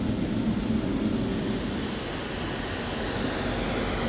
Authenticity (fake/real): real